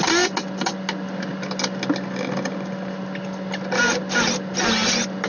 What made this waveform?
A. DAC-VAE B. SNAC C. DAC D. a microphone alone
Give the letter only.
D